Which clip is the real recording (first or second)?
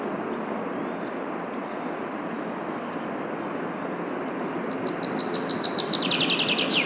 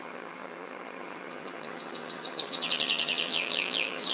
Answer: first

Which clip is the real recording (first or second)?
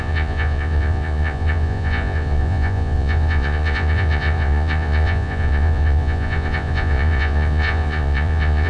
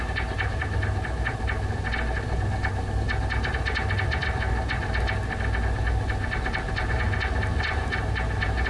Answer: second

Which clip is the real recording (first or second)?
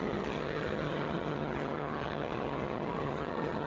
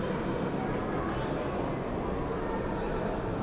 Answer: second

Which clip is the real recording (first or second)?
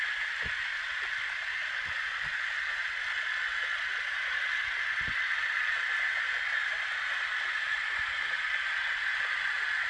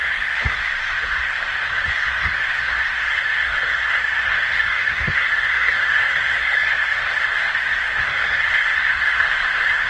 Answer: first